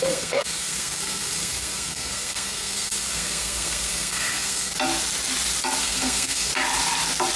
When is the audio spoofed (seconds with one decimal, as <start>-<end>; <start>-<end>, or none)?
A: 0.0-4.7; 5.8-6.5